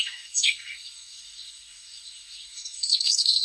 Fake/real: fake